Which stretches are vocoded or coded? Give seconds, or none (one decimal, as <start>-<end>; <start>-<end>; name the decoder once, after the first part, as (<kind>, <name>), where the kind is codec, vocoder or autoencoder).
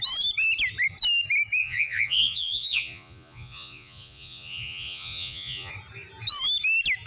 1.6-5.7 (vocoder, Vocos)